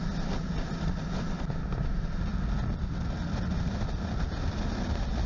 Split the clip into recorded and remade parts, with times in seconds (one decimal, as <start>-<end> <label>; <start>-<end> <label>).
0.0-5.3 recorded